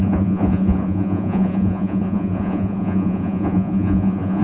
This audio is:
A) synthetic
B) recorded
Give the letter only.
A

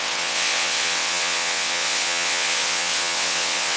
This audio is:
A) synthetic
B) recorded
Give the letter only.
A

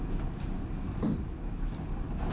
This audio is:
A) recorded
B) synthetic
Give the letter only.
A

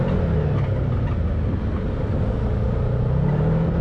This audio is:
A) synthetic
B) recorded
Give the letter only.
B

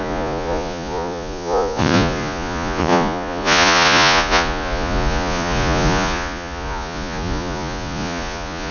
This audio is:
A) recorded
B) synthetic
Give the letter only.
B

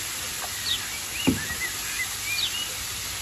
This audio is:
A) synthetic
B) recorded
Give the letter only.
B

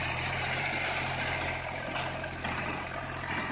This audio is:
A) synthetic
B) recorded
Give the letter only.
A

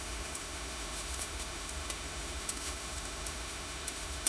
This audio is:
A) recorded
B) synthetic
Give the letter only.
B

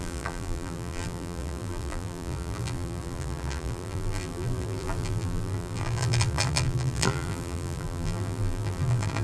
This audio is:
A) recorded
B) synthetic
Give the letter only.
B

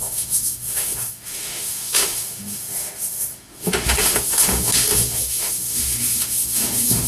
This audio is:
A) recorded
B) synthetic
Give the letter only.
B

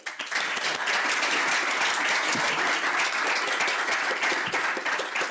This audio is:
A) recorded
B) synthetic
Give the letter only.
A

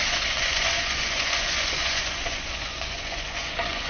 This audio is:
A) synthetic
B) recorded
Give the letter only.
A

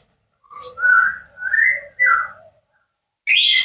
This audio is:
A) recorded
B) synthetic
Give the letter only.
A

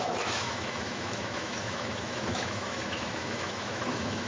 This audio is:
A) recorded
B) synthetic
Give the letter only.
B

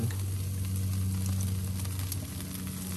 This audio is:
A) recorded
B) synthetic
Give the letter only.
A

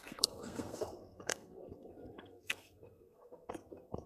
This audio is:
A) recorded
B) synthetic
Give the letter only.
B